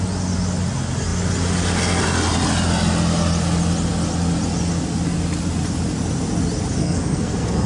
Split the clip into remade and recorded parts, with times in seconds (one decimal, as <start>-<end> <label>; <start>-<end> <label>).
0.0-6.8 recorded; 6.8-7.7 remade